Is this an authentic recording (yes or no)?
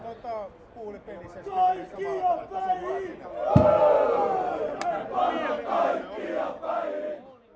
yes